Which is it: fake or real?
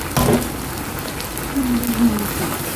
real